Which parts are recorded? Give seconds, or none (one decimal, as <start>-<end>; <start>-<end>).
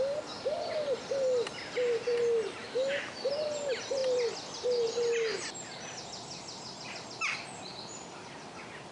0.0-2.6; 3.3-8.9